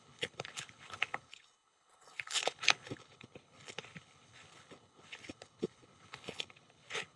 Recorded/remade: remade